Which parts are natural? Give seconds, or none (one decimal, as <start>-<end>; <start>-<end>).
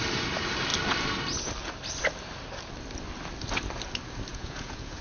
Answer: 0.0-4.3